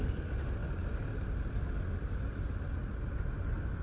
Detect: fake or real real